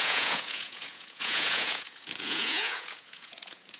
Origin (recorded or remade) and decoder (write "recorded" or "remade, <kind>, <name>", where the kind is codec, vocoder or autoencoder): remade, vocoder, Vocos